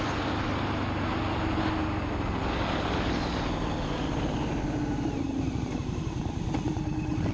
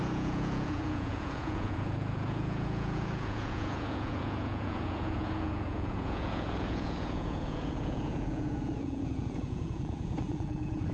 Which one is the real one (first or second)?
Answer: first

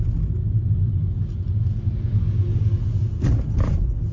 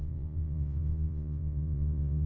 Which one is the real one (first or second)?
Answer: first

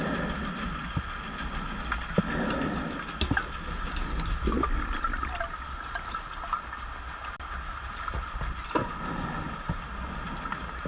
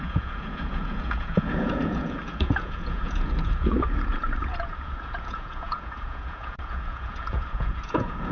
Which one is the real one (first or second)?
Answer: first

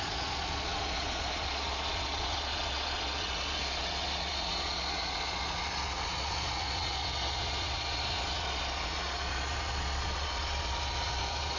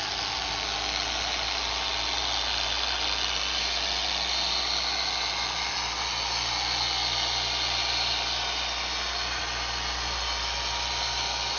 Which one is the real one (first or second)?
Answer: second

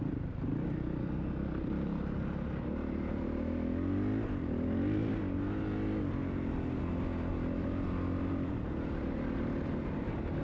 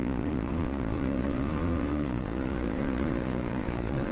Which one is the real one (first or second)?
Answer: first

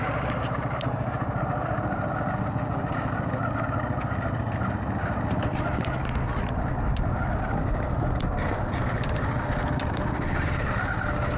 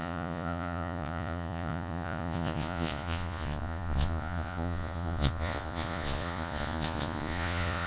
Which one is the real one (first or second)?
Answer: first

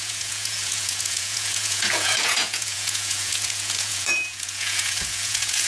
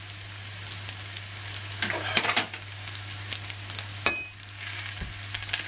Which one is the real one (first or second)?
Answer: second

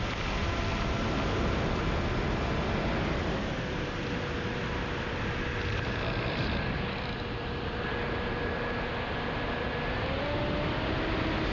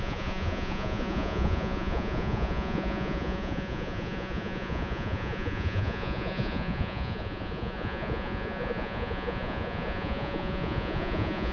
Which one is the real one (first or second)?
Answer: first